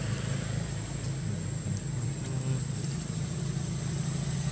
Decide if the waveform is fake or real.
real